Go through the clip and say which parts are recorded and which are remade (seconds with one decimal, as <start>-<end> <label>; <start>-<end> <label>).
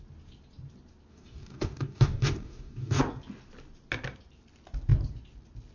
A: 0.0-1.1 recorded; 1.1-3.0 remade; 3.0-5.7 recorded